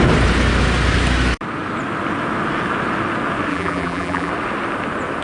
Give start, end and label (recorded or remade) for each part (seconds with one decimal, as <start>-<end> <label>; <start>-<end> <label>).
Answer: 0.0-3.5 recorded; 3.5-4.3 remade; 4.3-5.2 recorded